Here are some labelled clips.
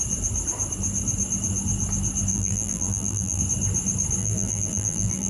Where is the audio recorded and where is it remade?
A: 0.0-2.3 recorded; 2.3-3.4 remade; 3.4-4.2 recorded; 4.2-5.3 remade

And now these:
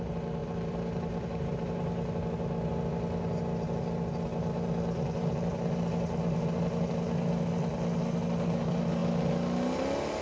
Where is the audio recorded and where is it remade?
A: 0.0-0.4 recorded; 0.4-1.9 remade; 1.9-10.2 recorded